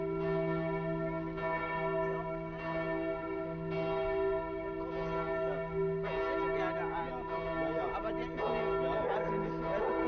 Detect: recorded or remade recorded